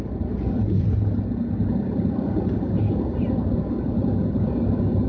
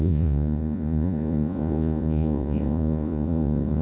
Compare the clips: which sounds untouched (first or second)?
first